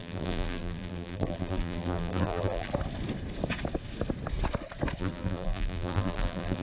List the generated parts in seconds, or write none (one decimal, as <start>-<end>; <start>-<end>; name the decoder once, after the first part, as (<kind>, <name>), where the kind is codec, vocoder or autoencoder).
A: 0.0-2.7 (vocoder, BigVGAN v2); 5.0-6.6